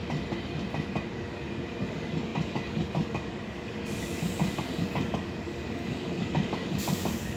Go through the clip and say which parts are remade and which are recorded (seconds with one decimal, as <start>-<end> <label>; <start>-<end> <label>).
0.0-1.1 recorded; 1.1-7.4 remade

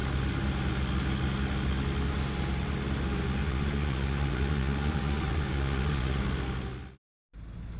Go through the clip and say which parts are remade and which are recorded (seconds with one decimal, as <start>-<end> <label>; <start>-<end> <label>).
0.0-3.4 recorded; 3.4-6.2 remade; 6.2-7.8 recorded

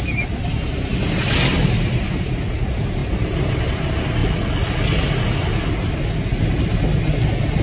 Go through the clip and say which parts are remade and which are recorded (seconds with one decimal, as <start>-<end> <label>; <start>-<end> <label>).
0.0-7.6 recorded

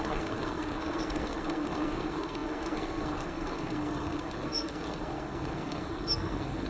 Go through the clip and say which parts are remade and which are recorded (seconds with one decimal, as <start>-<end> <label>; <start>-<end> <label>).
0.0-6.7 remade

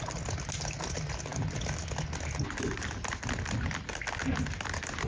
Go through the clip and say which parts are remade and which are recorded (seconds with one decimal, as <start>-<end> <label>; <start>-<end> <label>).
0.0-5.1 recorded

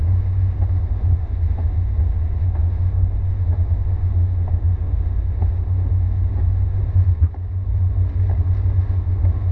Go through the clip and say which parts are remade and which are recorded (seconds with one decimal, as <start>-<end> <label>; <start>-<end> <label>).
0.0-6.8 remade; 6.8-9.0 recorded; 9.0-9.5 remade

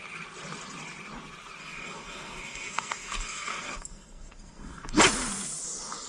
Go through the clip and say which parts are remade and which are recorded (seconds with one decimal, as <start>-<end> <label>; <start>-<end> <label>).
0.0-1.6 recorded; 1.6-5.0 remade; 5.0-6.1 recorded